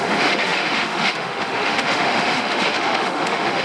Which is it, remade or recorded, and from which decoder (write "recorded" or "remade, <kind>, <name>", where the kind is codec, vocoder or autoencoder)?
remade, autoencoder, DAC-VAE